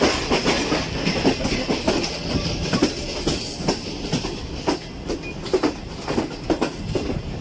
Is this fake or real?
real